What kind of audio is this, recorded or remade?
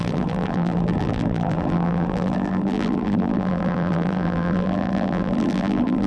remade